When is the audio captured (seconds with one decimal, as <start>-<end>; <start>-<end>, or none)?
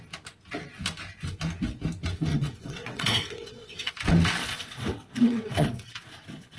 0.0-2.3; 3.9-4.4